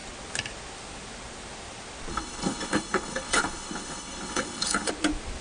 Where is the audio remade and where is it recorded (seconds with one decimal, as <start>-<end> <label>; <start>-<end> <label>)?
0.0-2.1 recorded; 2.1-4.9 remade; 4.9-5.4 recorded

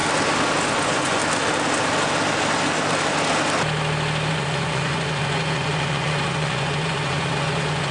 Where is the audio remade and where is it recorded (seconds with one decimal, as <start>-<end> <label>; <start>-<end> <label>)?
0.0-0.7 recorded; 0.7-1.2 remade; 1.2-4.3 recorded; 4.3-7.9 remade

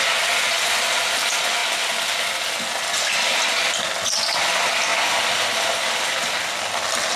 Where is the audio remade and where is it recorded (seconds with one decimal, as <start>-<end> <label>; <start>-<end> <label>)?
0.0-4.9 recorded; 4.9-6.0 remade; 6.0-7.2 recorded

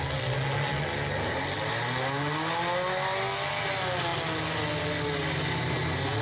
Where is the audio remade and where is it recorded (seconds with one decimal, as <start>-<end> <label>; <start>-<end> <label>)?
0.0-6.2 recorded

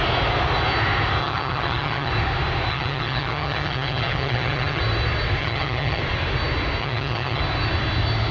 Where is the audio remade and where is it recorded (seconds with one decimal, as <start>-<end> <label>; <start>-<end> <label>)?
0.0-1.2 recorded; 1.2-2.1 remade; 2.1-2.7 recorded; 2.7-4.8 remade; 4.8-5.4 recorded; 5.4-6.0 remade; 6.0-6.8 recorded; 6.8-7.4 remade; 7.4-8.3 recorded